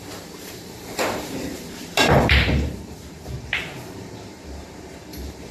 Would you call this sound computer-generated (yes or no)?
yes